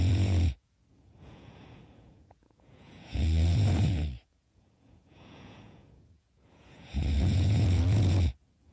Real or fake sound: fake